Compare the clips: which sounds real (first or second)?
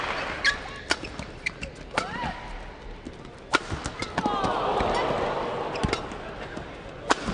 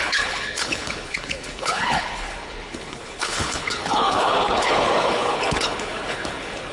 first